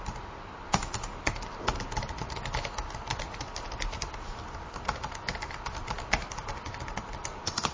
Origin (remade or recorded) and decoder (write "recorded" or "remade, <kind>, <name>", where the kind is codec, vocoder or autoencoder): recorded